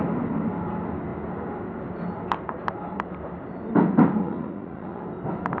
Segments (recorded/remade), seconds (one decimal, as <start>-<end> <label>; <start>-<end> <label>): 0.0-4.2 recorded; 4.2-5.0 remade; 5.0-5.6 recorded